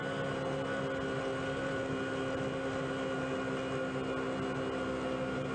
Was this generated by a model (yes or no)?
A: no